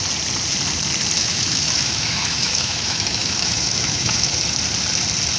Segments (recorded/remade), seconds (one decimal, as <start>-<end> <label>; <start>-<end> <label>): 0.0-1.2 recorded; 1.2-4.4 remade; 4.4-5.4 recorded